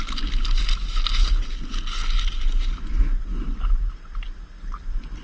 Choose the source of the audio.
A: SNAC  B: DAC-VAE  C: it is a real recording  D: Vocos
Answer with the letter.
C